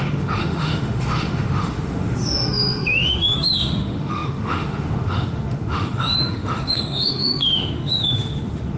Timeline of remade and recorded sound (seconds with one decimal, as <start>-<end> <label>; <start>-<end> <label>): 0.0-8.8 remade